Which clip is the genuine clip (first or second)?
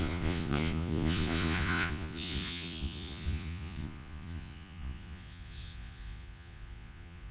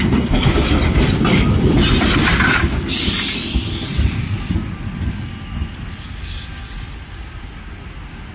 second